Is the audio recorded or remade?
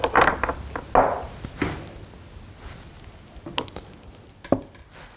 recorded